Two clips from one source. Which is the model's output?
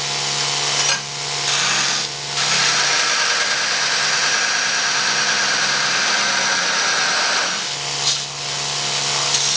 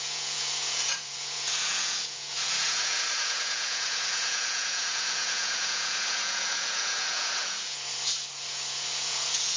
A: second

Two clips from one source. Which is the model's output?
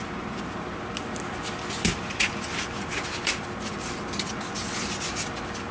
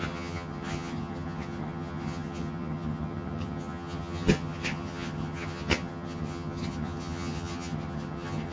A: second